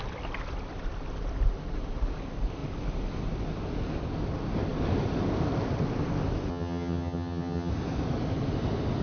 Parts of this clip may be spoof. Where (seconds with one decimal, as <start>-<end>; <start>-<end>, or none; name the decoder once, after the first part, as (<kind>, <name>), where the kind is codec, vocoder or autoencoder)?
6.5-7.7 (vocoder, HiFi-GAN)